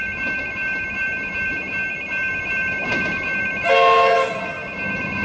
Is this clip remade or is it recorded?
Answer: recorded